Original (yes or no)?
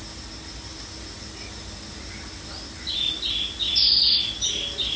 yes